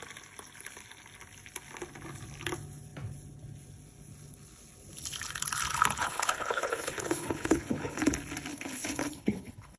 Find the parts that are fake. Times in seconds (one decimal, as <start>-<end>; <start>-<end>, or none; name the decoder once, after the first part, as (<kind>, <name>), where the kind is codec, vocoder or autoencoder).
6.0-8.0 (codec, HILCodec); 8.5-9.8